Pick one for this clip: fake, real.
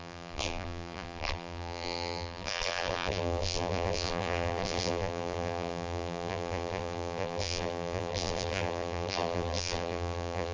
fake